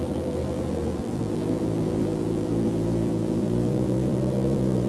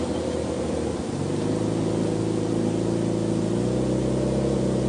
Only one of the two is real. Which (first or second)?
second